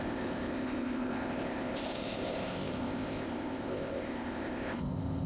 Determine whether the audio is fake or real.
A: fake